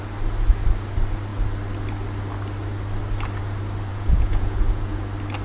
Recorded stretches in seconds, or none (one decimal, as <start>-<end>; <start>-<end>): 0.0-3.9; 5.0-5.4